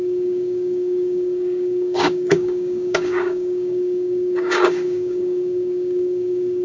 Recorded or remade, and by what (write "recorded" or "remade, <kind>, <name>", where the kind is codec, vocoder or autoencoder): remade, codec, DAC